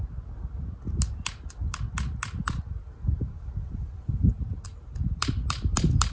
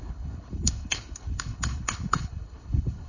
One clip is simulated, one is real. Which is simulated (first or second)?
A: second